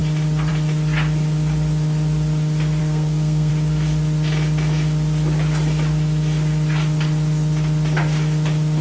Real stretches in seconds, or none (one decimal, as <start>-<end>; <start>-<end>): 0.0-2.8; 3.5-8.8